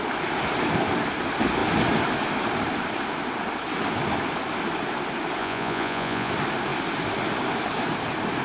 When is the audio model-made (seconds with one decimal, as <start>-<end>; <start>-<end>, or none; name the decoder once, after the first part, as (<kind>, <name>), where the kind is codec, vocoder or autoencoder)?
5.4-6.3 (vocoder, Vocos)